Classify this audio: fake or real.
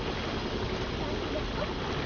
real